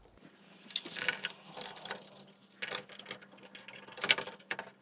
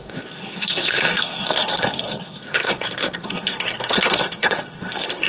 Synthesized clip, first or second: second